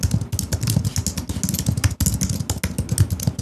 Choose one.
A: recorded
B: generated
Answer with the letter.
A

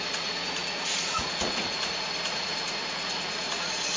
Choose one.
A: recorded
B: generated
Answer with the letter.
B